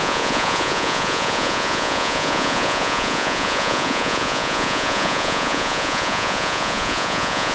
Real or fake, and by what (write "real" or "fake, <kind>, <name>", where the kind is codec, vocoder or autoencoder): fake, vocoder, Vocos